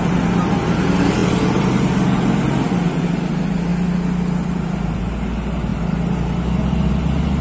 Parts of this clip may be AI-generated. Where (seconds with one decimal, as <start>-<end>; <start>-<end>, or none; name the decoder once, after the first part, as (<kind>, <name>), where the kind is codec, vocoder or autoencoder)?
none